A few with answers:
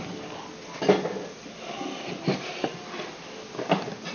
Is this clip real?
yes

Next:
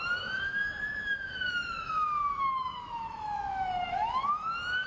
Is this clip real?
no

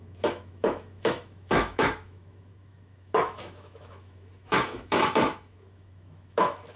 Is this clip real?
no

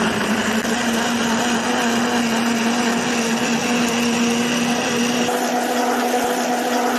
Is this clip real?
yes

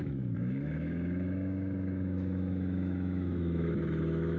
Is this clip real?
no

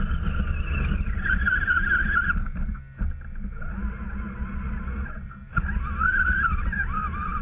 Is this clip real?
yes